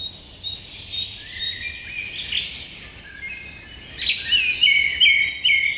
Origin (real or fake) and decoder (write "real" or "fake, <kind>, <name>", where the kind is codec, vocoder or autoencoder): real